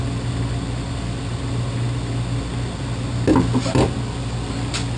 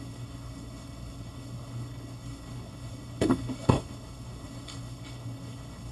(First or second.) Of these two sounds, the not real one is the second